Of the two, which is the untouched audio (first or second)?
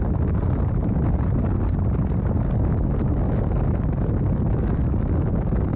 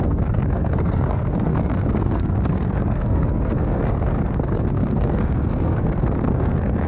first